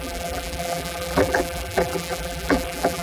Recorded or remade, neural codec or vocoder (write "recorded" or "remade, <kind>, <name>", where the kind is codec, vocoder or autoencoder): remade, vocoder, BigVGAN v2